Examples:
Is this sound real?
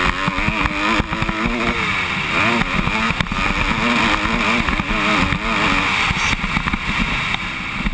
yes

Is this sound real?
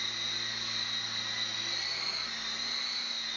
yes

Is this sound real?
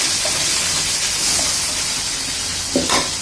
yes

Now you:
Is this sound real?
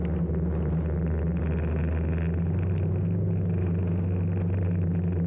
yes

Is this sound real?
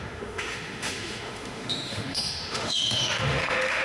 no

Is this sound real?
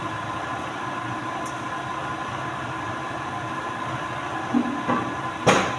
yes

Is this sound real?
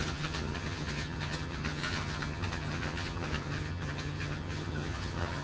no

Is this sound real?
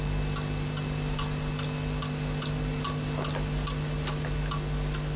yes